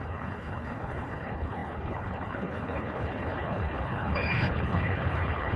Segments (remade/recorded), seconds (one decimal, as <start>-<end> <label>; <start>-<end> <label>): 0.0-5.6 remade